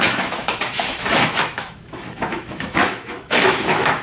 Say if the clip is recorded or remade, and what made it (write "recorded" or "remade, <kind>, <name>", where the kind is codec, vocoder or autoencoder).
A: remade, autoencoder, DAC-VAE